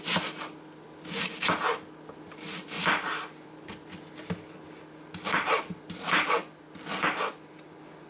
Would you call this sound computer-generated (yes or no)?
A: no